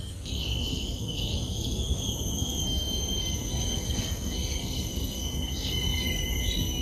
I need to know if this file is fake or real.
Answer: fake